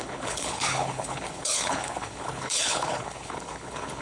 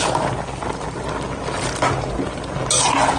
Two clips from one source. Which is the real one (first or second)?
second